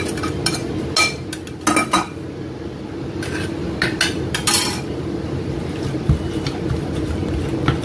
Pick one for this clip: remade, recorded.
recorded